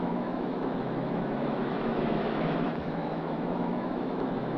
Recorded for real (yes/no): no